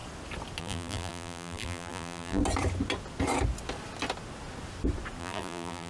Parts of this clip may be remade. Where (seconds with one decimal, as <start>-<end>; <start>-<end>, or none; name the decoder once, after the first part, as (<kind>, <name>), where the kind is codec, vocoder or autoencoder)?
0.6-2.4 (vocoder, BigVGAN v2); 5.2-5.9